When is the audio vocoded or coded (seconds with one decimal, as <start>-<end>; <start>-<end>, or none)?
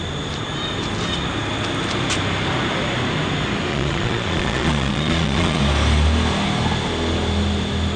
3.7-5.6